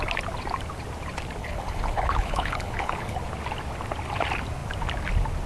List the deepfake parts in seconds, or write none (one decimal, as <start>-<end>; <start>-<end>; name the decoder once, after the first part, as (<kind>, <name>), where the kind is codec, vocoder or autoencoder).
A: 1.4-3.2 (codec, HILCodec)